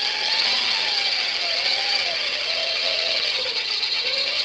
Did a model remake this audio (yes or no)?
yes